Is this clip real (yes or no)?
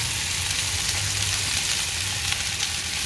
yes